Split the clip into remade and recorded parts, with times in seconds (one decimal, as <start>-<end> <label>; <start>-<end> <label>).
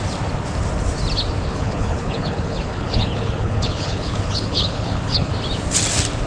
0.0-1.5 recorded; 1.5-5.3 remade; 5.3-6.3 recorded